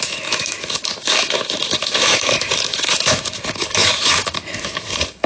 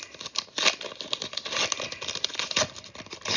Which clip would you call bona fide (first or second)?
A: second